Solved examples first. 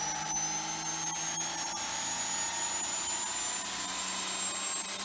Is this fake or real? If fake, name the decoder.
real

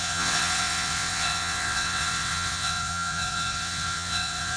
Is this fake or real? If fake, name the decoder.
fake, vocoder, WaveNeXt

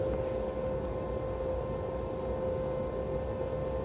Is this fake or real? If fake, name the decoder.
real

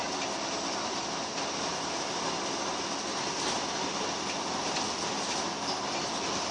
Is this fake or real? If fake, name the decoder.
real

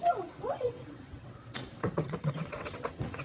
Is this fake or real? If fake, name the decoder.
fake, vocoder, WaveNeXt